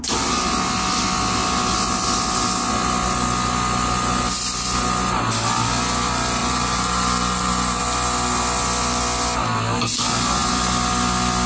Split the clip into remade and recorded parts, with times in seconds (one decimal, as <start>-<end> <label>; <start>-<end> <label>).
0.0-6.4 recorded; 6.4-7.8 remade; 7.8-11.5 recorded